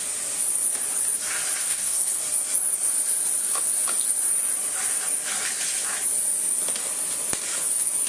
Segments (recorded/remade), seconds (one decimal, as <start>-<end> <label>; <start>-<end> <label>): 0.0-1.6 recorded; 1.6-2.2 remade; 2.2-8.1 recorded

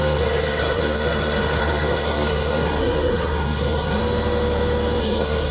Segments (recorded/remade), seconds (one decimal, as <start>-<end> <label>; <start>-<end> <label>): 0.0-4.0 remade; 4.0-5.0 recorded; 5.0-5.5 remade